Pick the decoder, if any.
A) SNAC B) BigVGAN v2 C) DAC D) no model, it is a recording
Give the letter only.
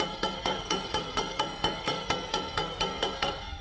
A